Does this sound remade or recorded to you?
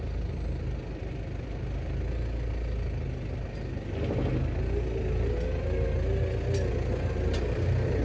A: recorded